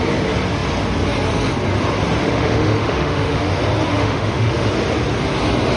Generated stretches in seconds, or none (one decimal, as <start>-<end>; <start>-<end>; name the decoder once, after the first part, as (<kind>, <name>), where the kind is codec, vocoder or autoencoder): 2.2-3.5 (autoencoder, DAC-VAE); 3.9-4.7